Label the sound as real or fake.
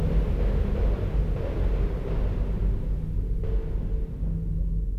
real